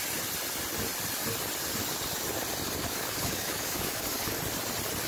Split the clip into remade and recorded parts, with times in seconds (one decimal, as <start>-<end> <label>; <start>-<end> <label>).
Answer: 0.0-2.8 recorded; 2.8-4.4 remade; 4.4-5.1 recorded